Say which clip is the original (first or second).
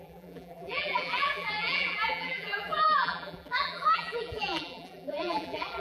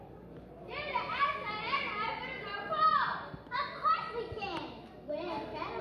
second